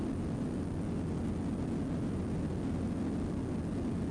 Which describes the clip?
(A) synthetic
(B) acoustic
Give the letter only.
B